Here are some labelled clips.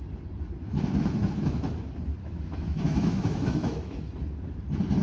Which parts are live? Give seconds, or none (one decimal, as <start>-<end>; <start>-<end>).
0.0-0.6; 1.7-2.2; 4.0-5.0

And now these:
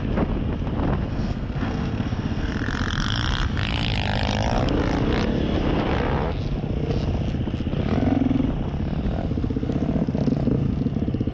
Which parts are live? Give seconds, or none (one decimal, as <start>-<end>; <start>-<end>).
0.0-1.1; 2.5-11.3

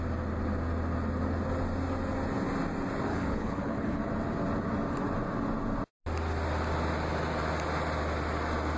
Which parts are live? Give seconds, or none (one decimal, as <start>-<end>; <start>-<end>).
0.0-3.1; 4.0-8.8

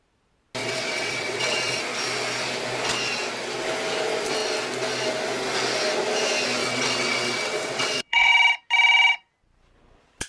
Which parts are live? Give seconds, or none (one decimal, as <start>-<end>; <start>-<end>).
0.0-0.6; 1.8-6.6; 8.3-10.3

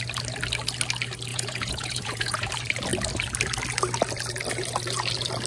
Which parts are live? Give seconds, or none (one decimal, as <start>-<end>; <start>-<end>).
0.0-1.3; 2.5-5.5

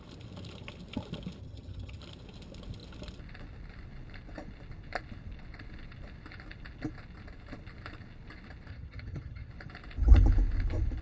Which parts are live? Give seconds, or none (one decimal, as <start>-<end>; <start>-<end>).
0.0-1.4; 2.0-8.7; 9.5-11.0